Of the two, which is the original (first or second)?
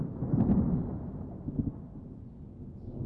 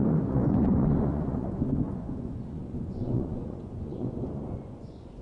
first